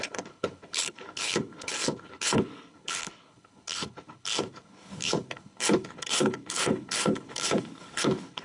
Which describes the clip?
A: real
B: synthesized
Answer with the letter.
B